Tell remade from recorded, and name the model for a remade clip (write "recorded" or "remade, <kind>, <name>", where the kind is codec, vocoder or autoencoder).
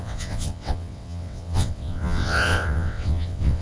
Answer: remade, vocoder, WaveNeXt